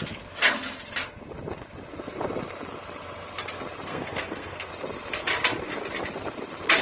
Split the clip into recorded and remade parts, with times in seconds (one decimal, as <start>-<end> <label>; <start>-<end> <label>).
0.0-3.9 recorded; 3.9-4.7 remade; 4.7-6.8 recorded